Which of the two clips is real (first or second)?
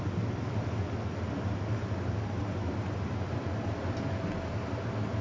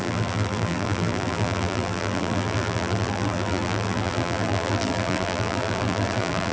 first